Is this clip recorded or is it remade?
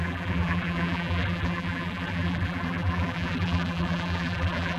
remade